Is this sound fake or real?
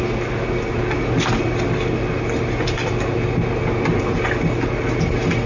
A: real